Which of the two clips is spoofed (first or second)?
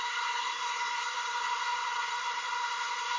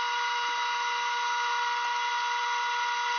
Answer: first